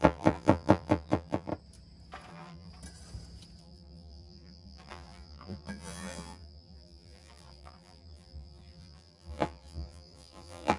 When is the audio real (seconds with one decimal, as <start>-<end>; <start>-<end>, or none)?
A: 1.5-2.3; 2.7-3.6